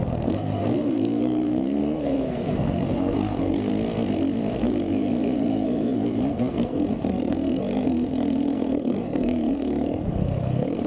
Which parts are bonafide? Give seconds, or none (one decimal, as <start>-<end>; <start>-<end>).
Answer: 3.7-4.5